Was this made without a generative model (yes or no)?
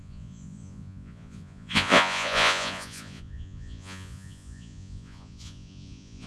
no